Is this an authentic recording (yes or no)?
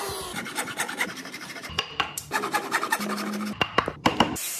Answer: no